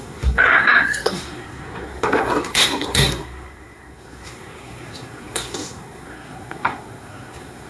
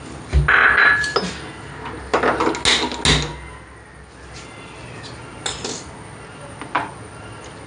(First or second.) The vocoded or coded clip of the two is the first